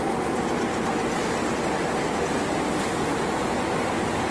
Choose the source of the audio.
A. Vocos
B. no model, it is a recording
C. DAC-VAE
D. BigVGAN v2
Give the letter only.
B